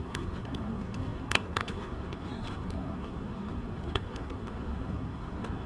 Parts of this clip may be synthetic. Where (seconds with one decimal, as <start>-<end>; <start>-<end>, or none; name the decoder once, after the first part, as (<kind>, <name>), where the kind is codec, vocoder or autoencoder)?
0.0-5.7 (codec, SNAC)